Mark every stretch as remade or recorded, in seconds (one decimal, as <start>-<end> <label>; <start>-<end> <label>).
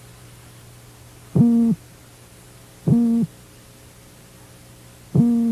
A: 0.0-5.5 recorded